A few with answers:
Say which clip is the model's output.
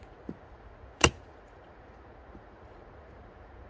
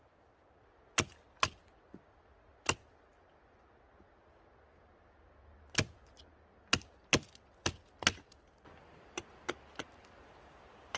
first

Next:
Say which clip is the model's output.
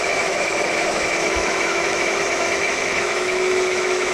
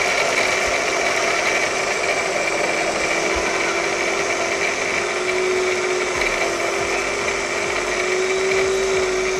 first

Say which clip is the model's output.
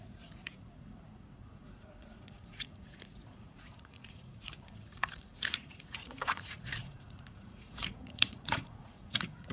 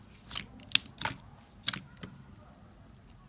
first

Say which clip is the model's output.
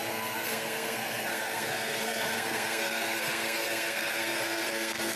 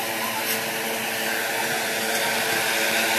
first